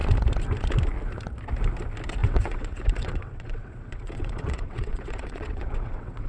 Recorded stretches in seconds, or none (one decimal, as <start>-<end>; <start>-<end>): 0.0-2.2